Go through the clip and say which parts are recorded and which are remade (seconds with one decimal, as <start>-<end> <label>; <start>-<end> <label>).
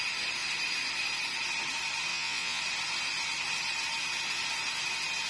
0.0-2.1 recorded; 2.1-2.6 remade; 2.6-5.3 recorded